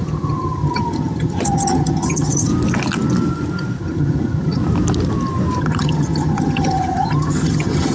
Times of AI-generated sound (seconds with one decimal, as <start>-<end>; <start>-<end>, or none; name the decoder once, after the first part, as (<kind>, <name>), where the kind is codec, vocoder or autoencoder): 0.0-2.5 (vocoder, HiFi-GAN); 3.8-4.6; 5.6-7.9

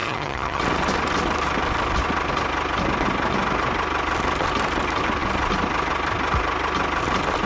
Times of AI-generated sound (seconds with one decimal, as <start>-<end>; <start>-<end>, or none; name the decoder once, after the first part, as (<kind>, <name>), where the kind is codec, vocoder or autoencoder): 0.0-0.6 (vocoder, HiFi-GAN)

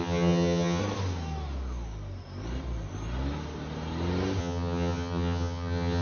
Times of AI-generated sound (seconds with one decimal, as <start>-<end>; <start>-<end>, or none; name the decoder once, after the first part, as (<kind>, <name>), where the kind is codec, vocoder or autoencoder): 0.0-0.8 (vocoder, HiFi-GAN); 4.4-6.0

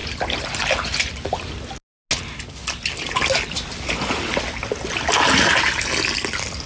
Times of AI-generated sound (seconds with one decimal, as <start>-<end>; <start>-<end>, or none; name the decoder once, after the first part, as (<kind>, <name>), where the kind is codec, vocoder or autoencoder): none

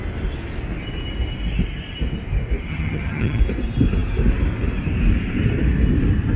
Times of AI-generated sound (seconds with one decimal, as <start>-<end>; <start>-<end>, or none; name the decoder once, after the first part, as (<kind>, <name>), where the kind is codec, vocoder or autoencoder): 2.7-3.4 (vocoder, HiFi-GAN)